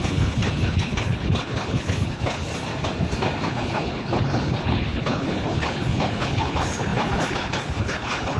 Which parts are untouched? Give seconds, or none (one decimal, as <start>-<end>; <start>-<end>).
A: 2.5-3.5